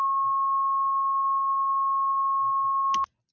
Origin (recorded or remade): recorded